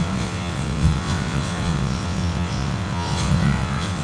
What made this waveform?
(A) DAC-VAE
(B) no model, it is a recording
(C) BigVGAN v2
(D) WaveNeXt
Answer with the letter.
D